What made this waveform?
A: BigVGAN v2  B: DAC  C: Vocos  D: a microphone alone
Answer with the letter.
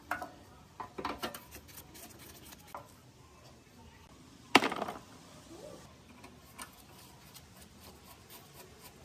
D